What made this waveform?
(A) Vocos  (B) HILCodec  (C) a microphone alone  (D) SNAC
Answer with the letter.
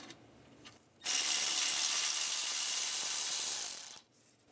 C